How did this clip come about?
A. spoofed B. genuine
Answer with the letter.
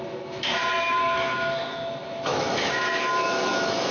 A